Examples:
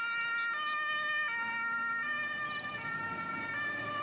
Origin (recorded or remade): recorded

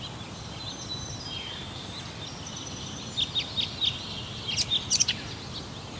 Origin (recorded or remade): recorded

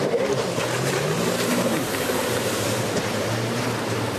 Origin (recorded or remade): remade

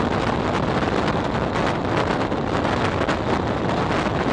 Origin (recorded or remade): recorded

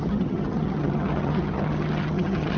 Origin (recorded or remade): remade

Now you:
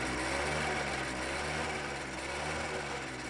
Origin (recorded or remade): recorded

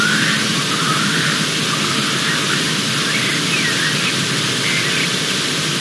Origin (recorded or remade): recorded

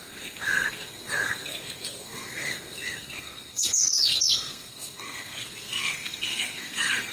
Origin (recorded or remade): remade